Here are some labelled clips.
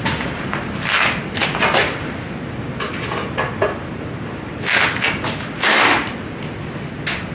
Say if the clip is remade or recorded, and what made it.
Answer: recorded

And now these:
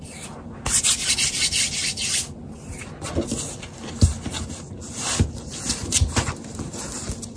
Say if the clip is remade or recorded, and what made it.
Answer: recorded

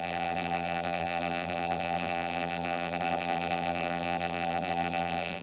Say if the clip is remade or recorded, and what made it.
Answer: remade, vocoder, BigVGAN v2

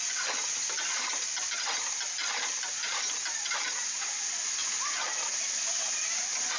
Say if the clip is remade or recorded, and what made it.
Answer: recorded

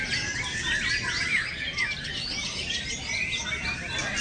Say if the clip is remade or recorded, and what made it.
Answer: recorded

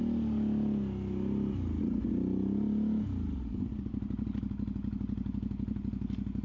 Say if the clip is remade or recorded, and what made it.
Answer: recorded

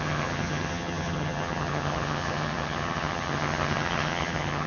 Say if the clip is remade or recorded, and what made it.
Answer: remade, vocoder, HiFi-GAN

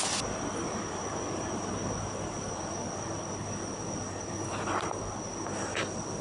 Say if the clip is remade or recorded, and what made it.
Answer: recorded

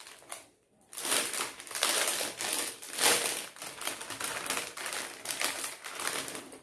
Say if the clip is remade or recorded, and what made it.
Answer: remade, vocoder, BigVGAN v2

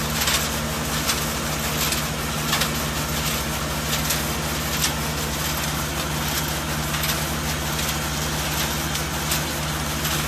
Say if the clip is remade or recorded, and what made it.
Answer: recorded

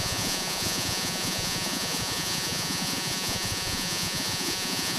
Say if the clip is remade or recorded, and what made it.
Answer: remade, vocoder, Vocos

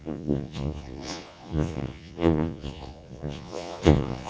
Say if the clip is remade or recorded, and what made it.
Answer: remade, vocoder, Vocos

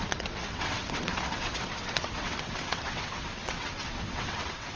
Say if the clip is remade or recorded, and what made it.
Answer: remade, vocoder, WaveNeXt